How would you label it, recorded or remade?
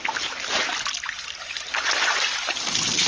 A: recorded